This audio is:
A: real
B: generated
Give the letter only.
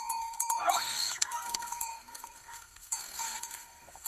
B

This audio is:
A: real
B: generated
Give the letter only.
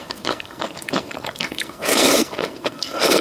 B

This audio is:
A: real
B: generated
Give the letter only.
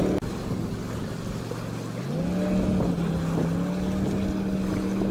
A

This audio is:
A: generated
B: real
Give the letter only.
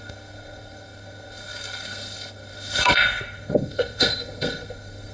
A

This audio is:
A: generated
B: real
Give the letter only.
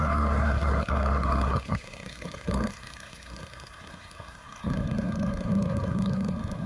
A